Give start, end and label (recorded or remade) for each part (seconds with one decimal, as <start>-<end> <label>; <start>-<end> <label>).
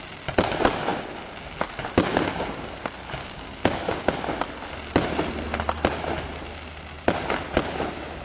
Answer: 0.0-2.1 recorded; 2.1-2.8 remade; 2.8-3.2 recorded; 3.2-4.1 remade; 4.1-8.2 recorded